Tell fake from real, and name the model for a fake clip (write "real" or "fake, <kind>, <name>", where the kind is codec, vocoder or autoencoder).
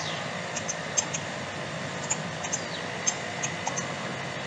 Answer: real